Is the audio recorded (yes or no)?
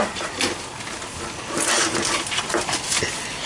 yes